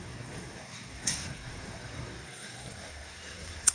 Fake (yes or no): yes